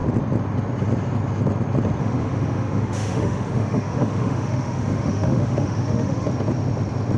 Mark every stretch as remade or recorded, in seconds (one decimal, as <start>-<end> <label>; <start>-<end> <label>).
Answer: 0.0-2.0 recorded; 2.0-6.3 remade; 6.3-7.2 recorded